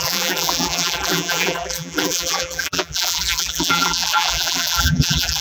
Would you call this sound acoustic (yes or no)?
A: no